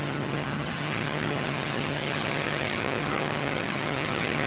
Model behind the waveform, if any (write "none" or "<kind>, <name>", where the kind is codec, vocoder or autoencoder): vocoder, HiFi-GAN